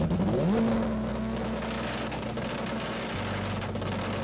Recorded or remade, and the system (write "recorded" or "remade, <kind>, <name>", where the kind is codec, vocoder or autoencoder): recorded